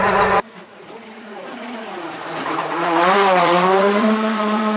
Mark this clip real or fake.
fake